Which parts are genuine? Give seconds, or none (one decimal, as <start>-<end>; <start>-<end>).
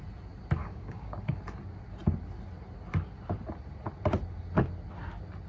0.0-0.6; 1.3-5.5